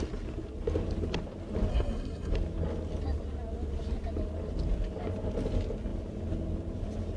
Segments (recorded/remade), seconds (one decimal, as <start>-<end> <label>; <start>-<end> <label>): 0.0-1.7 recorded; 1.7-2.3 remade; 2.3-7.2 recorded